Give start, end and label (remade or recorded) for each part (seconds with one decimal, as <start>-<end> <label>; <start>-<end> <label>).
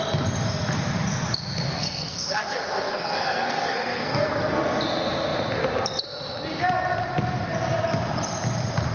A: 0.0-1.7 recorded; 1.7-4.4 remade; 4.4-8.9 recorded